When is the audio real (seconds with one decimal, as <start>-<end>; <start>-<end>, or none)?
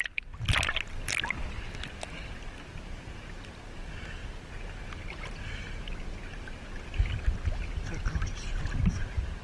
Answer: 0.0-9.4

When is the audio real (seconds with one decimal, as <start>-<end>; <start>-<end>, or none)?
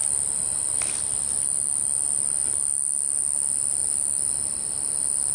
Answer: 0.0-5.3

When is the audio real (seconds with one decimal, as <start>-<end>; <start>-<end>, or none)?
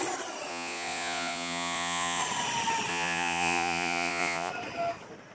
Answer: 0.0-0.5; 2.2-2.9; 4.5-5.3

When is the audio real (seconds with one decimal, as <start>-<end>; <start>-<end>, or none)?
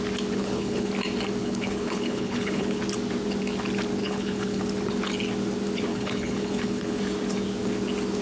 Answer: 0.0-0.4; 0.9-1.4; 2.8-4.0; 4.6-5.9; 7.0-8.2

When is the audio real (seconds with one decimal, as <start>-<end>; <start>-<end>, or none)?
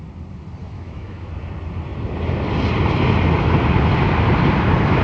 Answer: 0.0-0.6; 1.3-5.0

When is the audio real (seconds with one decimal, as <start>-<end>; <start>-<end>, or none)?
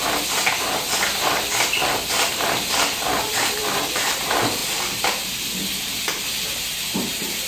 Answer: 0.0-2.3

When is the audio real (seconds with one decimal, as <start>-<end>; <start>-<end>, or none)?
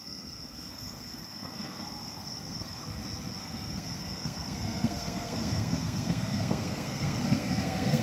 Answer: 2.8-3.4